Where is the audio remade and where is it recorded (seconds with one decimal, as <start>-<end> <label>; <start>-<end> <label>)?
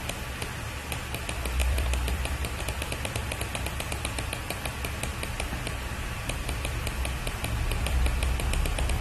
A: 0.0-1.6 recorded; 1.6-2.6 remade; 2.6-9.0 recorded